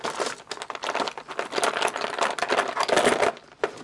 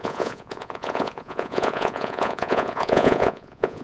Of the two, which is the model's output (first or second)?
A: second